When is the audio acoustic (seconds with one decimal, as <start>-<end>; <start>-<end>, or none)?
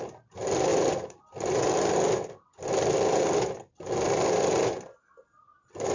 0.0-5.9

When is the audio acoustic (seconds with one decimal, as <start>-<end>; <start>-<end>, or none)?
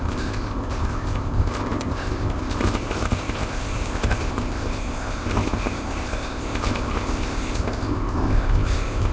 none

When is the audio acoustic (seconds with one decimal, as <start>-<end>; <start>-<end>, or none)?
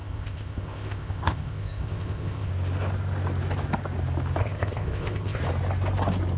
2.5-4.4; 5.4-6.4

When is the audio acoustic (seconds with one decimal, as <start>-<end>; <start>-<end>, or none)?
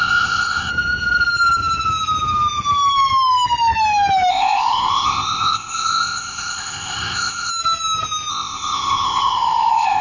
0.7-4.3; 7.5-8.3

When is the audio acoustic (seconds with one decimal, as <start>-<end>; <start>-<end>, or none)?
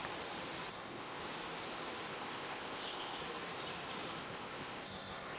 0.0-0.7; 1.2-2.1; 3.2-4.2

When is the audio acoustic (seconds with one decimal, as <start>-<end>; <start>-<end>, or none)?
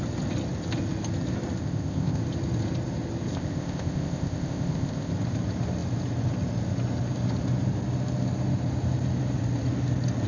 0.0-1.6; 2.2-3.3; 5.1-10.3